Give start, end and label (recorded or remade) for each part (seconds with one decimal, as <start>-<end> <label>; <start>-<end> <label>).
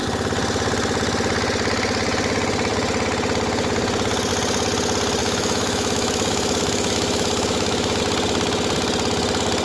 0.0-5.2 recorded; 5.2-8.0 remade; 8.0-9.6 recorded